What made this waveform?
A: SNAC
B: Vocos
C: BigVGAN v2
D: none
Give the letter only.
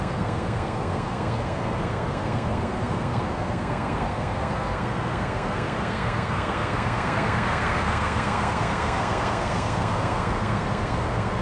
A